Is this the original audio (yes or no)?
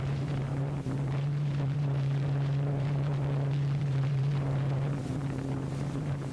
no